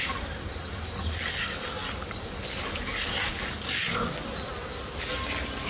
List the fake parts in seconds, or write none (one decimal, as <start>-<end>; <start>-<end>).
0.0-4.5